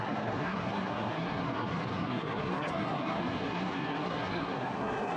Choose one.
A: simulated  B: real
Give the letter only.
A